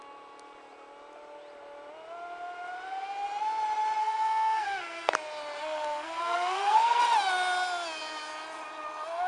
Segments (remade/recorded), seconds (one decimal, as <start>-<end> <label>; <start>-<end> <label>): 0.0-4.0 recorded; 4.0-5.1 remade; 5.1-5.6 recorded; 5.6-7.0 remade; 7.0-9.3 recorded